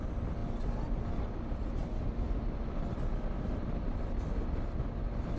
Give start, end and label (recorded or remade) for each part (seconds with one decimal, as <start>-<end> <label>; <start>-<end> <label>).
0.0-5.4 recorded